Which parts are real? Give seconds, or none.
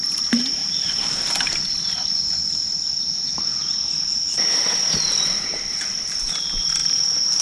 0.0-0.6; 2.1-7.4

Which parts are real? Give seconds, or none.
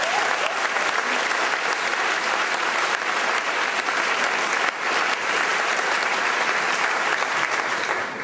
0.0-1.9; 3.5-5.5